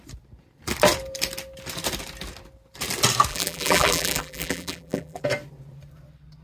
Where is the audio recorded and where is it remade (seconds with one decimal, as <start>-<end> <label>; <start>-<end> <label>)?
0.0-3.3 recorded; 3.3-5.2 remade; 5.2-6.4 recorded